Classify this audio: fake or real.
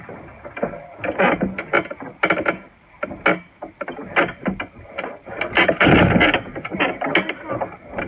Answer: real